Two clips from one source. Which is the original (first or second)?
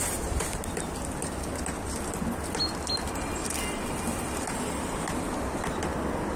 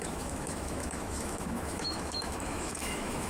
first